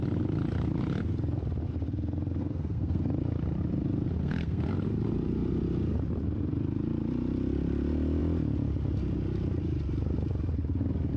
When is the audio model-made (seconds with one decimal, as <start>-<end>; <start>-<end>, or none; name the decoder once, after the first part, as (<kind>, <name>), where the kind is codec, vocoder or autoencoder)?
2.4-3.0 (codec, SNAC); 4.2-4.7